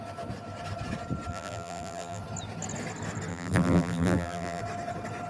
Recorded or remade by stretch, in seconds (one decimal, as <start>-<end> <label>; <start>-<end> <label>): 0.0-1.3 recorded; 1.3-2.2 remade; 2.2-3.3 recorded; 3.3-4.6 remade; 4.6-5.3 recorded